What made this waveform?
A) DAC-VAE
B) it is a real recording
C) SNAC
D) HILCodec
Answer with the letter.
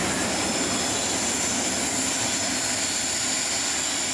B